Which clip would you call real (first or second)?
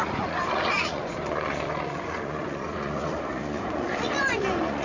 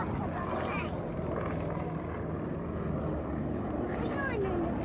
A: second